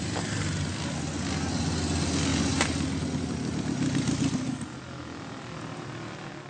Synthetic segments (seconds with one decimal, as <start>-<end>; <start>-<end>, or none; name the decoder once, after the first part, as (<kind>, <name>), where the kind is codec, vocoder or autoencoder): none